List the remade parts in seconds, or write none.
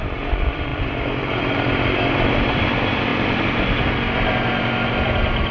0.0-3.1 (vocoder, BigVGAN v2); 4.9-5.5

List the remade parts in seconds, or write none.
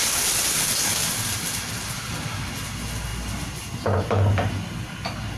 0.0-0.6 (vocoder, BigVGAN v2); 1.0-2.3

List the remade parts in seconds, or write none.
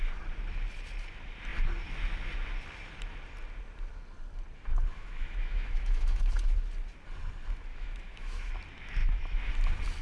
4.9-6.2 (autoencoder, DAC-VAE); 7.7-8.5; 9.0-9.5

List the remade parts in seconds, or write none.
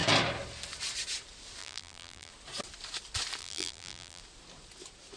1.6-2.3 (vocoder, BigVGAN v2); 3.4-4.2